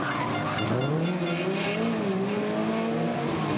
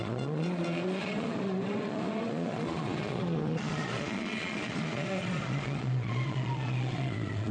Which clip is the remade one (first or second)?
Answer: second